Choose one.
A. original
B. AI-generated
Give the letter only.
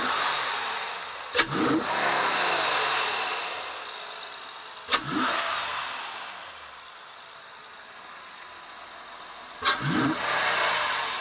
A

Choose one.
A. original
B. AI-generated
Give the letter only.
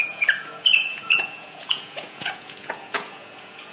B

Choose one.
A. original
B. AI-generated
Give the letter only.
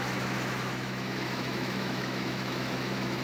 B